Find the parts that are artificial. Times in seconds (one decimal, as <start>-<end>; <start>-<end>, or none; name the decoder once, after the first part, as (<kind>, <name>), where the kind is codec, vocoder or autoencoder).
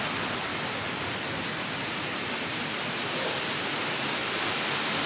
0.5-3.4 (vocoder, BigVGAN v2)